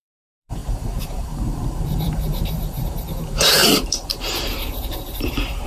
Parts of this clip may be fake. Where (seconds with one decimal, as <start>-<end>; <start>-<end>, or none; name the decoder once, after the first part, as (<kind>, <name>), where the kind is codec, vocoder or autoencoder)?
0.0-5.7 (vocoder, BigVGAN v2)